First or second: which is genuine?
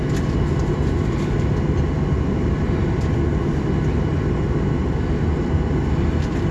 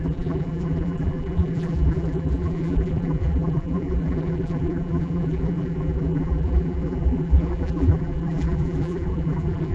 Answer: first